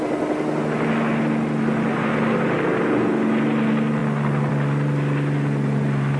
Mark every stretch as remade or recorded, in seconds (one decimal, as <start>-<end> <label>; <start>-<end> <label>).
0.0-6.2 recorded